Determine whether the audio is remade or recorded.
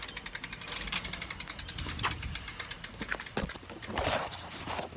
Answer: recorded